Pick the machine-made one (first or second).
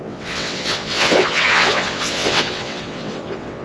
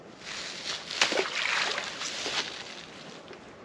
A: first